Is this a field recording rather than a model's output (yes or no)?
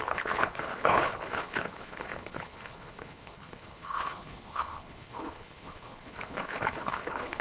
no